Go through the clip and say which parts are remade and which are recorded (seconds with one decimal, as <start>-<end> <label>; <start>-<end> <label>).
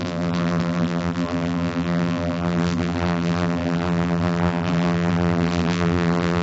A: 0.0-6.4 remade